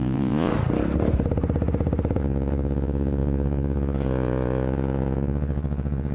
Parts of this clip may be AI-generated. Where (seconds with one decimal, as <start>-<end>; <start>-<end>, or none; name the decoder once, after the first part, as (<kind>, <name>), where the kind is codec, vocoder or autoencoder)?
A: 0.0-0.5 (vocoder, Vocos); 2.2-6.1